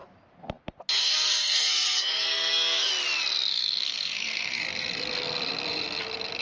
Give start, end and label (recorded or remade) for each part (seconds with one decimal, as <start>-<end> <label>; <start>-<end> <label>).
0.0-1.0 recorded; 1.0-2.9 remade; 2.9-3.5 recorded; 3.5-4.6 remade; 4.6-6.4 recorded